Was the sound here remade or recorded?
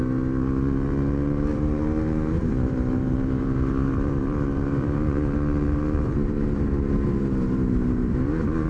remade